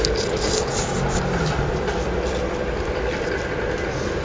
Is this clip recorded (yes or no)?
yes